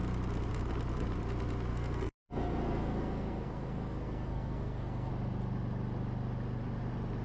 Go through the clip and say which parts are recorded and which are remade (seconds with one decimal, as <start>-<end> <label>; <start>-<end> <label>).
0.0-1.7 recorded; 1.7-5.1 remade; 5.1-7.2 recorded